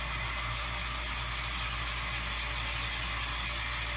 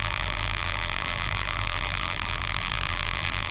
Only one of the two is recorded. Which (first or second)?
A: first